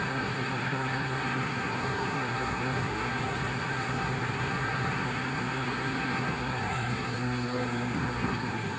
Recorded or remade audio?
remade